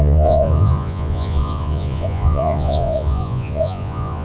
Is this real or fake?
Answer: fake